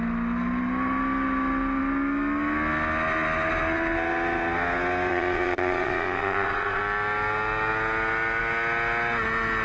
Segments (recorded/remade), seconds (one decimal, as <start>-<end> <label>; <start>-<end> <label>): 0.0-5.1 recorded; 5.1-6.8 remade; 6.8-9.6 recorded